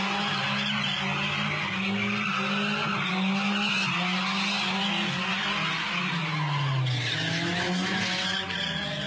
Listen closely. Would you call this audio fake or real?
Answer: real